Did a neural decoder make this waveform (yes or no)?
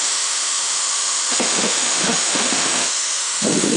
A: yes